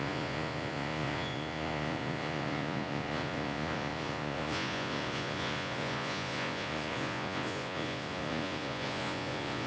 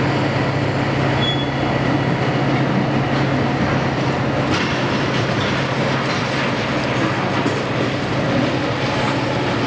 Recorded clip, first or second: second